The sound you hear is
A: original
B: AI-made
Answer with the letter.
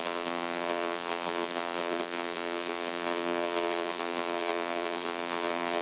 B